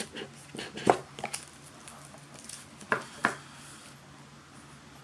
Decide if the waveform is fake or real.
real